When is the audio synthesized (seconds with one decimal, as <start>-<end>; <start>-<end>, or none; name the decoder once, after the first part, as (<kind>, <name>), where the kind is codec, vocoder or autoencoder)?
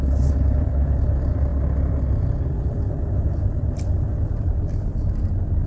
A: none